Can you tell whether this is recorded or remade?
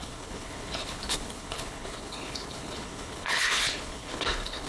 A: remade